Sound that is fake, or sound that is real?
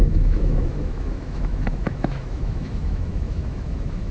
fake